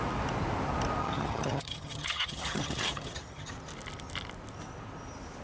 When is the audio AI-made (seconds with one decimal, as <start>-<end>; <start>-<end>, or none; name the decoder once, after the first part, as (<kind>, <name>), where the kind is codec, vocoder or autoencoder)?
1.0-3.5 (vocoder, HiFi-GAN)